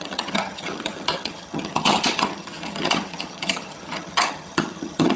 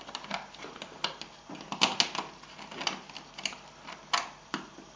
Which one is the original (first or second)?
second